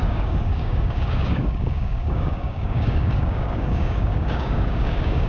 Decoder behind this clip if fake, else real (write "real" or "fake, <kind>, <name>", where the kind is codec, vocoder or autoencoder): fake, codec, DAC